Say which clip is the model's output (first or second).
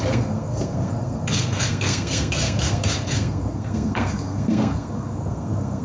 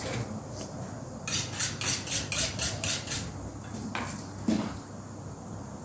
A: first